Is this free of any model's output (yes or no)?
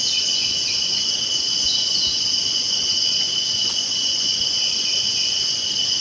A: no